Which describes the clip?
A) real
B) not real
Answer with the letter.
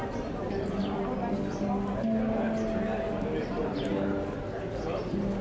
A